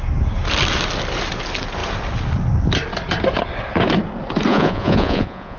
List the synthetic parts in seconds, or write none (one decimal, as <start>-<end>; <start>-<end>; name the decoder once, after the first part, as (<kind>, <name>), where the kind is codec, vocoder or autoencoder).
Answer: 4.5-5.6 (vocoder, Vocos)

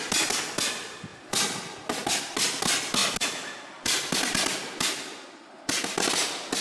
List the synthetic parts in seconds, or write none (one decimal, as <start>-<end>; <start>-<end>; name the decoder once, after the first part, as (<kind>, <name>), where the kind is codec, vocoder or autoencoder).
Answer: none

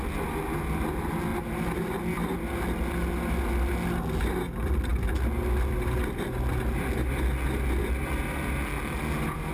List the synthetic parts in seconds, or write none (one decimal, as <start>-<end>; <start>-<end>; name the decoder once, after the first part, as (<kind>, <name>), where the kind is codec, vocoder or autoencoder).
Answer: 1.3-2.2 (vocoder, BigVGAN v2)

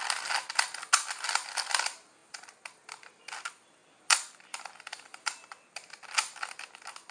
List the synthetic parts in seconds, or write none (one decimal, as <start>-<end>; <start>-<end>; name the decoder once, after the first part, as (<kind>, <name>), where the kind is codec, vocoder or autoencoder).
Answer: none